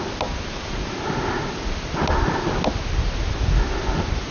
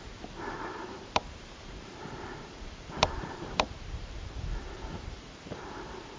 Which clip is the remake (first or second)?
second